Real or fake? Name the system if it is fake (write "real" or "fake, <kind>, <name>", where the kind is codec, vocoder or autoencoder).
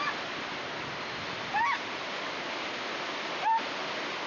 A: real